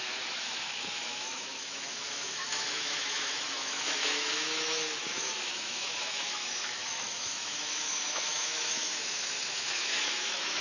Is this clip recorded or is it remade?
remade